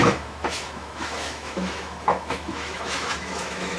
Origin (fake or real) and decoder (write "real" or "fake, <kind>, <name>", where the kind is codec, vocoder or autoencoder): fake, autoencoder, DAC-VAE